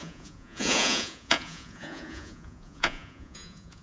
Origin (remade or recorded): remade